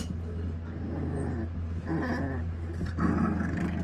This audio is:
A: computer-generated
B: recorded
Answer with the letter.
B